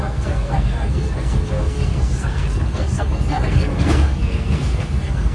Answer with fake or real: fake